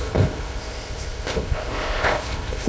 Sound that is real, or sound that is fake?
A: fake